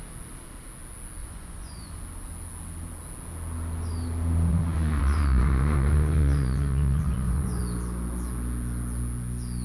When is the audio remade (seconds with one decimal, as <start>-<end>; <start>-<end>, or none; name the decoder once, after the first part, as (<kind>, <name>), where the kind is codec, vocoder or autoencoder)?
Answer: 1.2-2.0 (vocoder, Vocos); 4.5-7.6